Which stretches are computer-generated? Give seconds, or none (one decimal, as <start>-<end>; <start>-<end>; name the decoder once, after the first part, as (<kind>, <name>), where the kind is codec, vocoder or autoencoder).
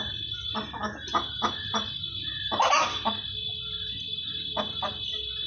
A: none